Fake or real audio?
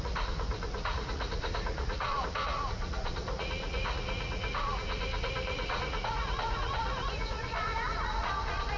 fake